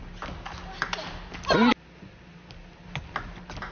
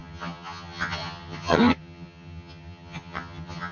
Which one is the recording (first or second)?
first